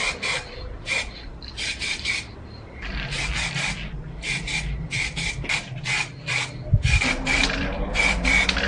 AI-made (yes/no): no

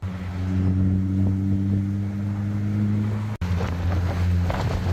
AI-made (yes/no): no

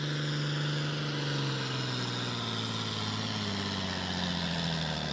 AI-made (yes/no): no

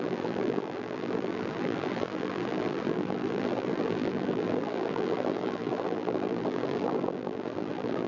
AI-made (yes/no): yes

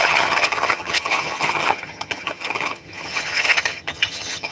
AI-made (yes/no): yes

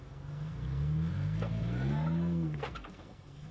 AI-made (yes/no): yes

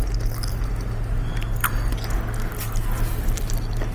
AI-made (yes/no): no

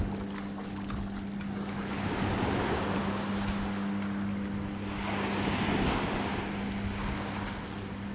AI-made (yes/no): no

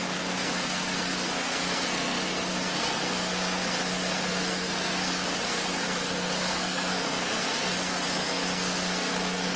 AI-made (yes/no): yes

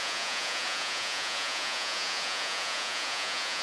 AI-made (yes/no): yes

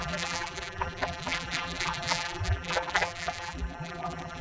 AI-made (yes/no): yes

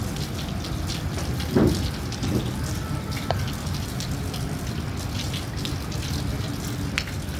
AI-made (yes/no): no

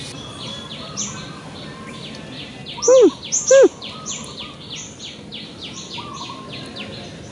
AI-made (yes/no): no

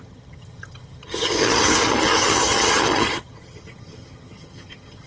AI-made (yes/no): yes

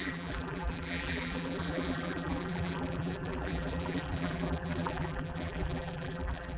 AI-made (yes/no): yes